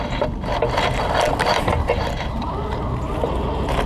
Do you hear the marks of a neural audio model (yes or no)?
yes